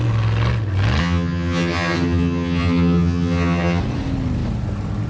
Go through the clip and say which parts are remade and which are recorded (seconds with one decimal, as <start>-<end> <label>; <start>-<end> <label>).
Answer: 0.0-1.0 recorded; 1.0-3.8 remade; 3.8-5.1 recorded